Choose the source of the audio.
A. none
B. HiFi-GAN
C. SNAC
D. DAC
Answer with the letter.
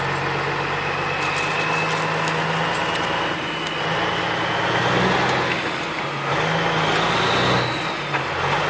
A